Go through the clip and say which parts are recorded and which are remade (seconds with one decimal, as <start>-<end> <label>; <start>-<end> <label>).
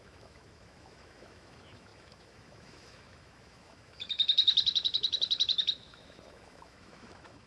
0.0-7.5 remade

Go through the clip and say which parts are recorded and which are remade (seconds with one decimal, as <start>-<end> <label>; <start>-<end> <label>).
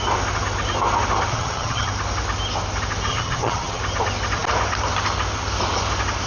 0.0-1.3 recorded; 1.3-1.9 remade; 1.9-3.1 recorded; 3.1-3.8 remade; 3.8-6.3 recorded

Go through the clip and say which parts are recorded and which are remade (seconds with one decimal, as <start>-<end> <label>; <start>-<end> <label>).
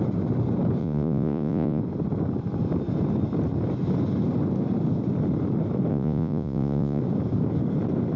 0.0-0.8 recorded; 0.8-1.8 remade; 1.8-5.9 recorded; 5.9-7.0 remade; 7.0-8.2 recorded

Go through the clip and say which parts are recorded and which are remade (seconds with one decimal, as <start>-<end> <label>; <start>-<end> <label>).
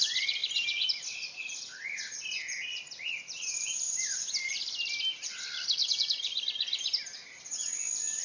0.0-0.4 recorded; 0.4-2.3 remade; 2.3-2.7 recorded; 2.7-4.6 remade; 4.6-5.8 recorded; 5.8-6.4 remade; 6.4-8.2 recorded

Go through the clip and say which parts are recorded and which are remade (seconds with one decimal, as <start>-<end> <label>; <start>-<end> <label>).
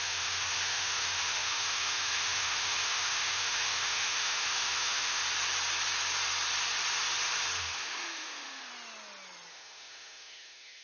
0.0-5.2 remade; 5.2-7.6 recorded; 7.6-8.7 remade; 8.7-9.5 recorded; 9.5-10.8 remade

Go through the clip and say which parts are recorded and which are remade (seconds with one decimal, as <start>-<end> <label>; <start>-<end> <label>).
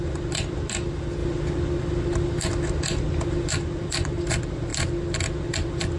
0.0-6.0 recorded